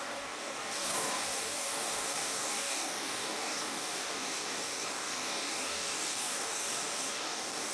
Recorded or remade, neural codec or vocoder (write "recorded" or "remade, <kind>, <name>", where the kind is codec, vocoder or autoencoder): remade, codec, DAC